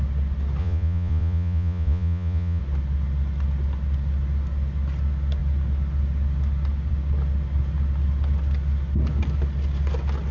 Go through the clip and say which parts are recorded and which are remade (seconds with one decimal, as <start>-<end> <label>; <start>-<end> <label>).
0.0-0.6 recorded; 0.6-2.6 remade; 2.6-10.3 recorded